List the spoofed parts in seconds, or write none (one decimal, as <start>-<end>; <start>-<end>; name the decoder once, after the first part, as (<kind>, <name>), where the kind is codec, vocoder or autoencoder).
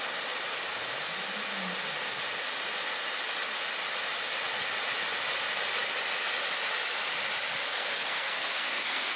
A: 7.7-9.2 (codec, SNAC)